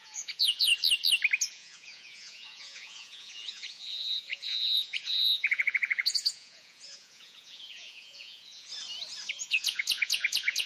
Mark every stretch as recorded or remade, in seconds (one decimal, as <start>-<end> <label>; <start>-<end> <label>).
0.0-0.7 remade; 0.7-1.5 recorded; 1.5-8.7 remade; 8.7-9.3 recorded; 9.3-10.7 remade